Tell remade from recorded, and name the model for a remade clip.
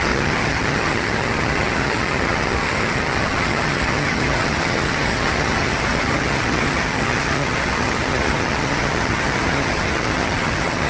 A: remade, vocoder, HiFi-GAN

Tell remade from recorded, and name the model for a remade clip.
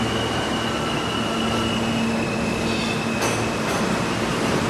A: recorded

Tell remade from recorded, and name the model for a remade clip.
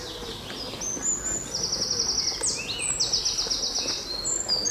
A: recorded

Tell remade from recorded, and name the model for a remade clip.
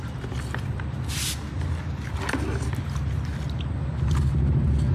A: recorded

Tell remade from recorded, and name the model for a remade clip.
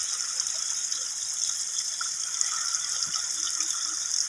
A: recorded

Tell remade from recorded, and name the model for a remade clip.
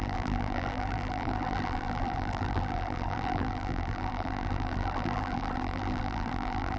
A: remade, vocoder, BigVGAN v2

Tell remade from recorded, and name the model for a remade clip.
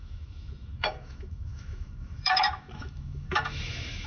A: remade, autoencoder, DAC-VAE